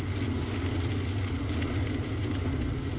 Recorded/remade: recorded